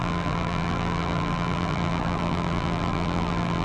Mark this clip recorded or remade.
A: remade